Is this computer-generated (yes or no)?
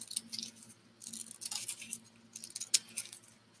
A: no